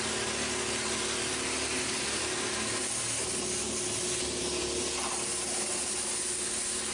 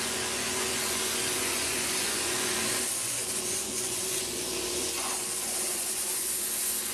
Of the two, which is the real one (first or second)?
first